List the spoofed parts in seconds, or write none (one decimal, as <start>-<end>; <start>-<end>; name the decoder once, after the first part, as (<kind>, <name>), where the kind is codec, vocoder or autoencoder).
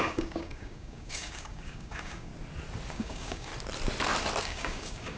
0.0-2.3 (codec, DAC); 2.9-3.5; 4.4-5.2